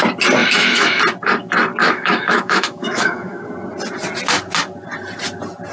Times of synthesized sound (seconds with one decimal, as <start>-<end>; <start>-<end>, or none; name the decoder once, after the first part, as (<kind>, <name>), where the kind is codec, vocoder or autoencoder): 0.4-1.0 (autoencoder, DAC-VAE); 1.8-3.5